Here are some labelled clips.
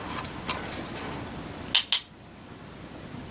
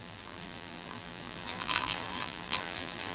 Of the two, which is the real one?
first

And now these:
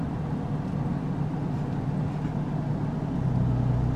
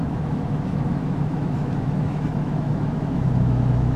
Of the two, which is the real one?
first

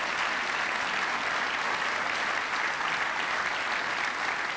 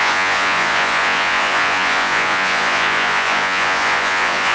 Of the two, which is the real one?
first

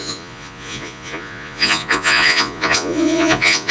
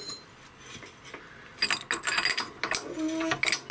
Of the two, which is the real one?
second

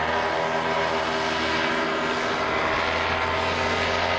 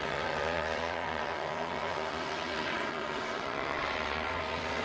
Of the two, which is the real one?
first